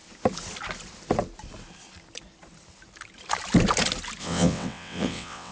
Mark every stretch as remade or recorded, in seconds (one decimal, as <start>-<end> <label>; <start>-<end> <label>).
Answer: 0.0-4.2 recorded; 4.2-5.5 remade

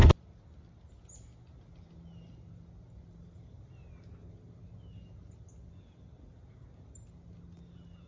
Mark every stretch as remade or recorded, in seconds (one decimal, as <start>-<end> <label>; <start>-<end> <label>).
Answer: 0.0-8.1 recorded

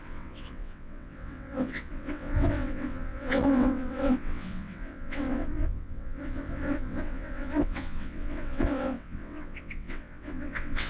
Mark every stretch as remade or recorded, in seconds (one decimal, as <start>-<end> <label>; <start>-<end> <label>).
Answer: 0.0-10.9 remade